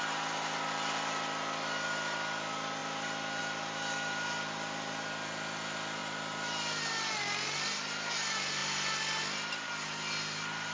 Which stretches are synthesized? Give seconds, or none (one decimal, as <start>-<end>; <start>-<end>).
none